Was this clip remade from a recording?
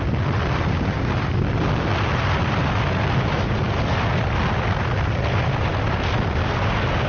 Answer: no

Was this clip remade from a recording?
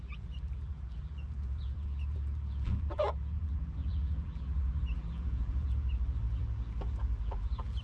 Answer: yes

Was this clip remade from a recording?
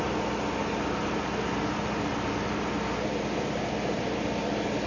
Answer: no